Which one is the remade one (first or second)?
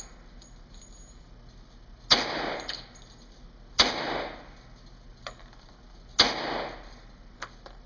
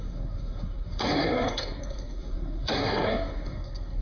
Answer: second